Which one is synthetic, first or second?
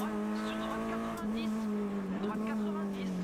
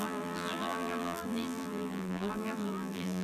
second